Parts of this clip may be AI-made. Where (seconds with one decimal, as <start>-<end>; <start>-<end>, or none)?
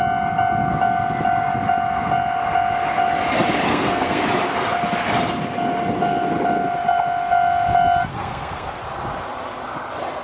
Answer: 3.7-4.2; 8.1-8.8